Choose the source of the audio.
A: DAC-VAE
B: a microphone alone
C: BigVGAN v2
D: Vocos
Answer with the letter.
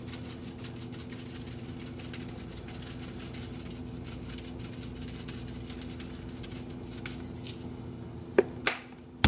B